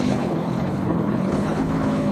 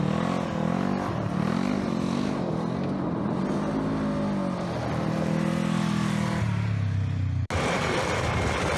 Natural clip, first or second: second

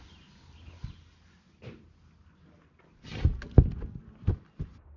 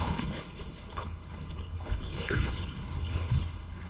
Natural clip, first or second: first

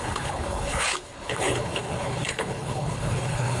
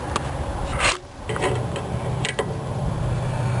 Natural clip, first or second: second